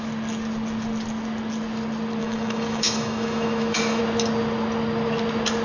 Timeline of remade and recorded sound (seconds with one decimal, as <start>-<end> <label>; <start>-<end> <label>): 0.0-2.2 recorded; 2.2-4.0 remade; 4.0-5.6 recorded